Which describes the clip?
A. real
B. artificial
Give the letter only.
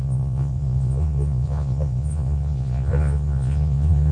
B